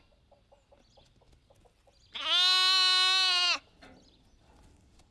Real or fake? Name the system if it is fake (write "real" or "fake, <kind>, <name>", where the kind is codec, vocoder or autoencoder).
real